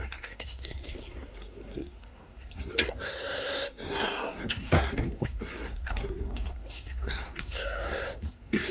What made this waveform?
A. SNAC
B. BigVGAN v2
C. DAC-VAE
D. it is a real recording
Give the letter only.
A